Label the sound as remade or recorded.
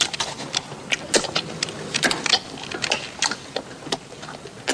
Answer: recorded